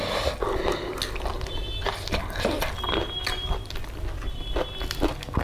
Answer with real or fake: real